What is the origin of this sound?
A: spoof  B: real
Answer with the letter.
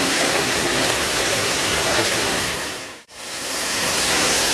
A